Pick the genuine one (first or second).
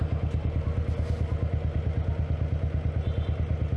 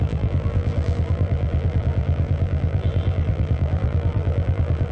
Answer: first